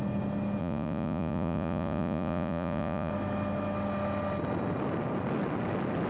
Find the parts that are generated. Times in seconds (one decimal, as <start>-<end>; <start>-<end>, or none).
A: 0.6-3.1